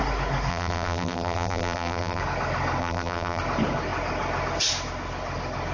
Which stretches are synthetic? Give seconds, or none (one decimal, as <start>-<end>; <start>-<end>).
0.5-2.2; 2.8-3.4